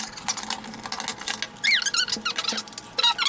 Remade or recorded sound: recorded